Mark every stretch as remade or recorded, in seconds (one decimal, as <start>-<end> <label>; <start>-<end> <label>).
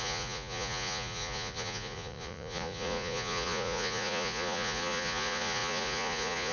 0.0-6.5 remade